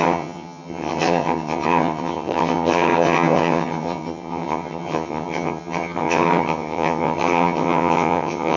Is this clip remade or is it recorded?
remade